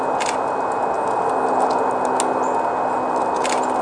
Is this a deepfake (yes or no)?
no